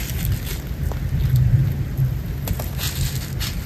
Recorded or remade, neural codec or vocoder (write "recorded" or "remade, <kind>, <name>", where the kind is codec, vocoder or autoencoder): recorded